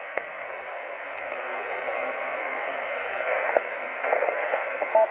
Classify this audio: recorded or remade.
remade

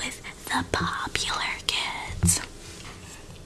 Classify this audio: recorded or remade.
recorded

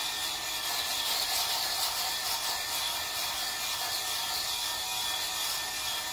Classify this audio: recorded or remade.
recorded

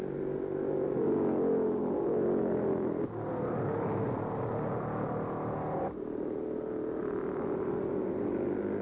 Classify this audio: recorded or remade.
recorded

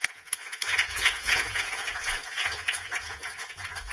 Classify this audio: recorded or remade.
remade